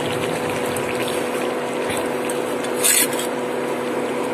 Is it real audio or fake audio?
real